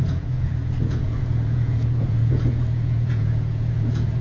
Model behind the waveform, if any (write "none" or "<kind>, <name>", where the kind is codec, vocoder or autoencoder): vocoder, Vocos